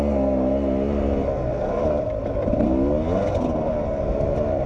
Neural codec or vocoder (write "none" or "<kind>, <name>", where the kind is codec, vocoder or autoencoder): none